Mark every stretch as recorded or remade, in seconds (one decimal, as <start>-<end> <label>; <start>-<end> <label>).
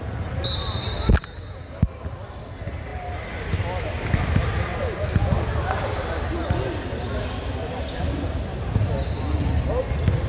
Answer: 0.0-10.3 recorded